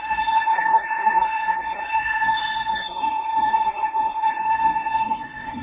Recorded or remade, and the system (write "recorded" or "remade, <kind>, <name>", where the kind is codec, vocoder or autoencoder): remade, codec, SNAC